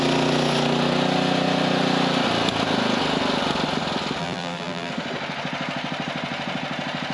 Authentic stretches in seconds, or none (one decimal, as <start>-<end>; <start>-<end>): 0.0-4.2; 4.9-7.1